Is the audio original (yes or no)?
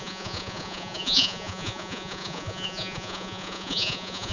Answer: no